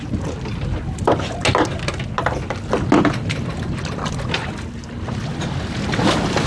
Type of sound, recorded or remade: recorded